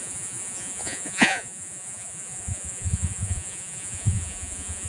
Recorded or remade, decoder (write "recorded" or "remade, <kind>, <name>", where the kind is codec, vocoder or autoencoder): remade, vocoder, Vocos